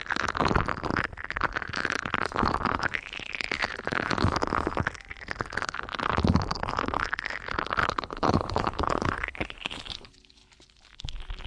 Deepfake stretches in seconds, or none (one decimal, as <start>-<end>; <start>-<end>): 7.8-10.1